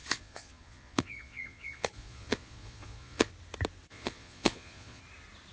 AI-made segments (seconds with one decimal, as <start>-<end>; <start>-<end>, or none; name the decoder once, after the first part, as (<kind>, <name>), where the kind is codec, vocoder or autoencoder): 0.0-3.3 (vocoder, Vocos); 3.9-5.0